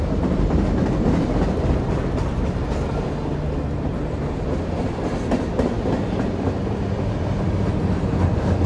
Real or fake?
real